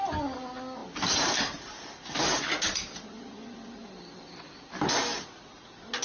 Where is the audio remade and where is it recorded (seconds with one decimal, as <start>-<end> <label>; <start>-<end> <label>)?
0.0-6.0 recorded